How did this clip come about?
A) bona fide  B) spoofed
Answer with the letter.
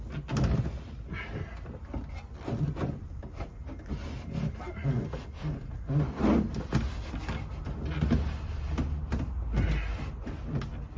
A